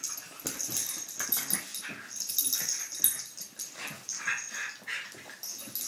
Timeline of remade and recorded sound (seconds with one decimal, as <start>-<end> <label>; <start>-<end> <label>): 0.0-5.9 recorded